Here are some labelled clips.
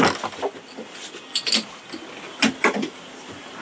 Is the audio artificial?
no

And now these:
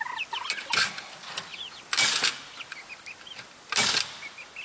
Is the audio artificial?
no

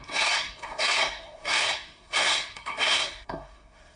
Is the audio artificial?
yes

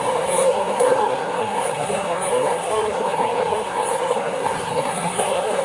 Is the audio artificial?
yes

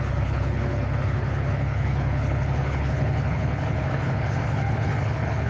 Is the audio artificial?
yes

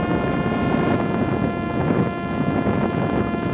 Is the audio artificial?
no